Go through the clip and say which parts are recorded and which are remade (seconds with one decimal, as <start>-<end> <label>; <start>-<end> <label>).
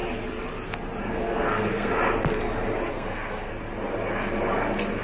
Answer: 0.0-1.0 recorded; 1.0-1.9 remade; 1.9-2.9 recorded; 2.9-3.5 remade; 3.5-5.0 recorded